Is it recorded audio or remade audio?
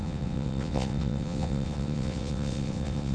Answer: remade